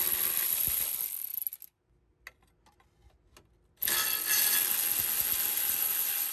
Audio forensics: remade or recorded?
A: recorded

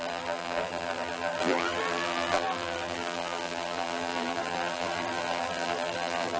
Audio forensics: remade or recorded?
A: remade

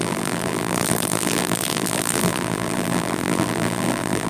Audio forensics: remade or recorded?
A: remade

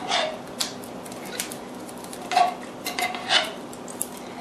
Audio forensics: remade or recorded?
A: recorded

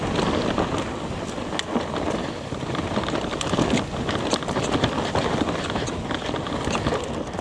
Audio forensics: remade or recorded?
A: recorded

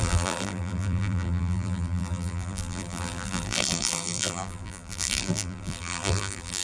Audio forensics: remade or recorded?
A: remade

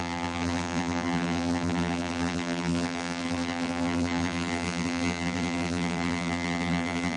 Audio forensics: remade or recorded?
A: remade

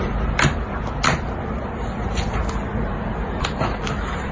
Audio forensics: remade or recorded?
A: recorded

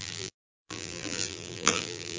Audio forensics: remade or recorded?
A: remade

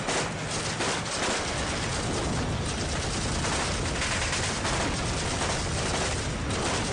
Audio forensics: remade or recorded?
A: recorded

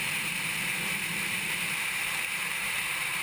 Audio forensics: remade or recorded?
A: remade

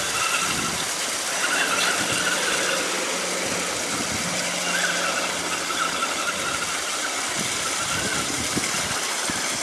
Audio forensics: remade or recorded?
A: recorded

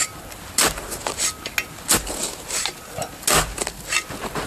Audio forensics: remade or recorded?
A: recorded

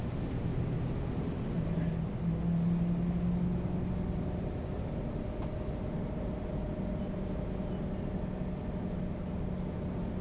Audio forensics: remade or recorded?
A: recorded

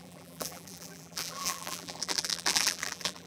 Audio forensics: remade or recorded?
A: remade